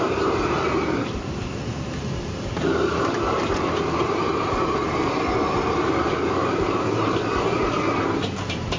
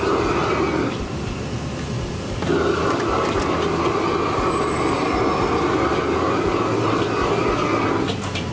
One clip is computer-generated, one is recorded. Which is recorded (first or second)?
second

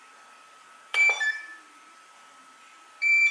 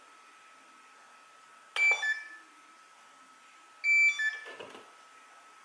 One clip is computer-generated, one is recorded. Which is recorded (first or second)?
second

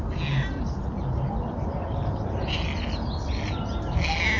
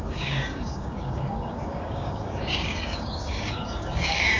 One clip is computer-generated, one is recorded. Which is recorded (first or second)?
first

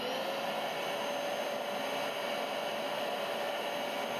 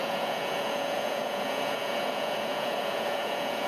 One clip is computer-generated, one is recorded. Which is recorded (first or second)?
first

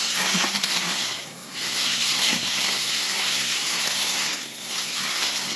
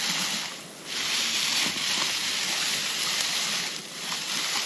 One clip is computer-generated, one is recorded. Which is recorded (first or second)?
second